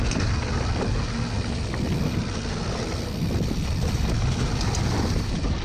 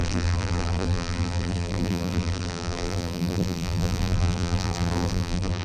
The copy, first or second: second